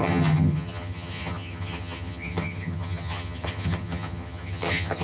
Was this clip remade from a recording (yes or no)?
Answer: yes